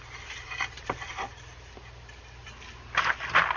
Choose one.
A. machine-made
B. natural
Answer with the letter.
B